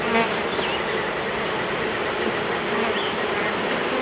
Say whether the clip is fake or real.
real